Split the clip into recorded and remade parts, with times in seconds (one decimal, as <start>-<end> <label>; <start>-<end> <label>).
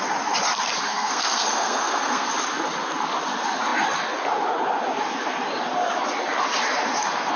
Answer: 0.0-0.9 recorded; 0.9-2.3 remade; 2.3-7.4 recorded